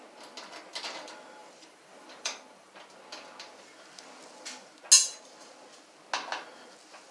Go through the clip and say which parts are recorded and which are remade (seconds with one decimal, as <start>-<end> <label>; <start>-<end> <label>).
0.0-1.4 recorded; 1.4-2.7 remade; 2.7-7.1 recorded